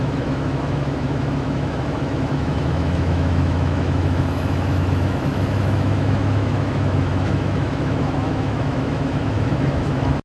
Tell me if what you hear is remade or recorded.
remade